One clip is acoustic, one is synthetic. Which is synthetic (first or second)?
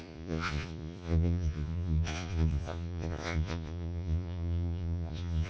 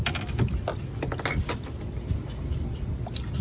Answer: first